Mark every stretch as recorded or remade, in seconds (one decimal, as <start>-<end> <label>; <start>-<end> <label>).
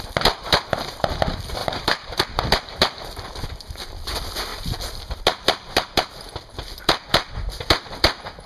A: 0.0-1.6 recorded; 1.6-2.2 remade; 2.2-4.5 recorded; 4.5-5.2 remade; 5.2-8.5 recorded